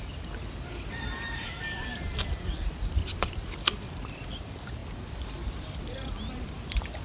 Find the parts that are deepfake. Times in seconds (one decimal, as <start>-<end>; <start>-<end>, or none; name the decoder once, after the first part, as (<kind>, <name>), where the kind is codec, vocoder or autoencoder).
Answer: 0.0-4.8 (vocoder, BigVGAN v2); 6.1-7.0